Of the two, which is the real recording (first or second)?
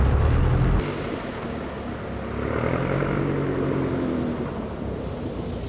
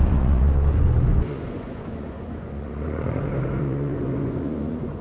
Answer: first